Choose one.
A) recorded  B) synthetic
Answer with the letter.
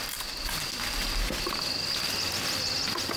A